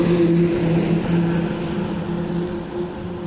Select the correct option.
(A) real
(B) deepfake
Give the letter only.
A